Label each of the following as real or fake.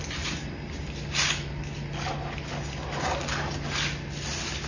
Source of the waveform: real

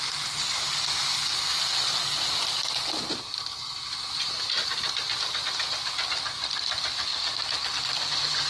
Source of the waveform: real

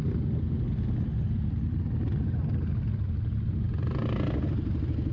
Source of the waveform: real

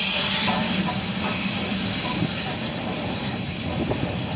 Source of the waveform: real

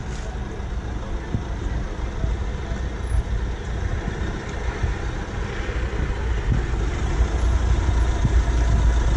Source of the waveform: real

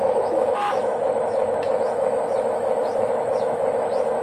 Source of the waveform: fake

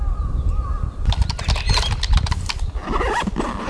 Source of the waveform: real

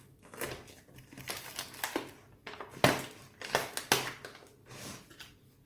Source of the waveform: real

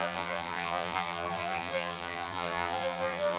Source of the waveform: fake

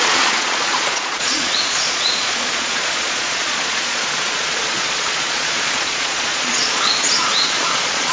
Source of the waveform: fake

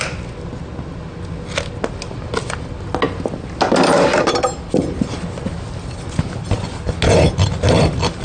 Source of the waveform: real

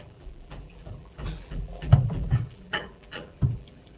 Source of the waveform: fake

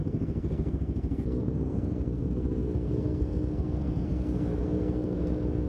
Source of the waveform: fake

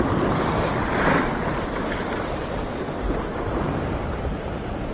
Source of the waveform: real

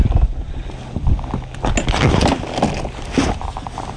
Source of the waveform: real